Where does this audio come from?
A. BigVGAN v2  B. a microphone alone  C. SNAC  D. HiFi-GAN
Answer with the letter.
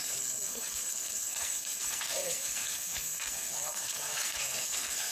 C